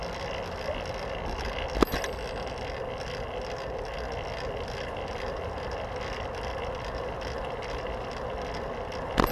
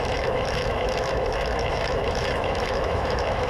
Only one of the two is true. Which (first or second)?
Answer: first